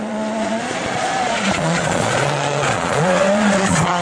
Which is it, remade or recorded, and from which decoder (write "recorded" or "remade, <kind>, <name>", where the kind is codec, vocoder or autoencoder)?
remade, vocoder, Vocos